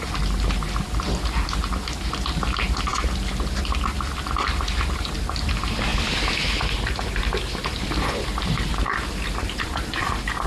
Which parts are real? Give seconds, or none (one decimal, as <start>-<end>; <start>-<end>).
0.0-10.5